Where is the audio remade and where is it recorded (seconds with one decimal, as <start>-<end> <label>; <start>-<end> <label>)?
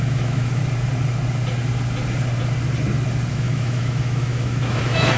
0.0-0.6 remade; 0.6-3.3 recorded; 3.3-5.2 remade